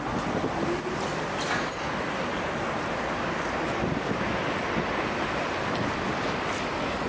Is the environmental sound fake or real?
real